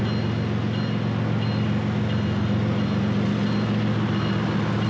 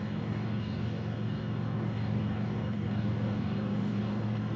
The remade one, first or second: second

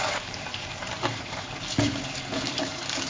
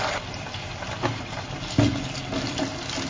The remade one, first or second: first